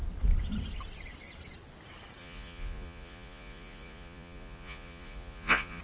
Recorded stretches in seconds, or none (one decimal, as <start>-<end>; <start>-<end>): 0.0-2.2